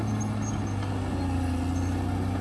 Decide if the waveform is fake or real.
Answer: real